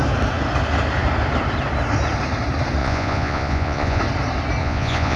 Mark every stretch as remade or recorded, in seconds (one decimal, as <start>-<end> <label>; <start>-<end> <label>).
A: 0.0-2.8 recorded; 2.8-4.0 remade; 4.0-4.6 recorded; 4.6-5.2 remade